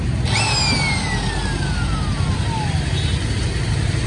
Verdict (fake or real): real